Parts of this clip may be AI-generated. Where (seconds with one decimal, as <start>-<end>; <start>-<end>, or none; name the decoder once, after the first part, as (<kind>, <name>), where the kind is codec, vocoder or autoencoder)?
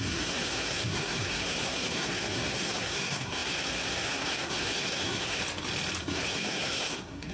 0.0-5.4 (codec, SNAC); 6.0-7.3